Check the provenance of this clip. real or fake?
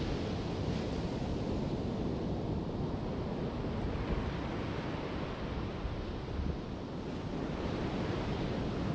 real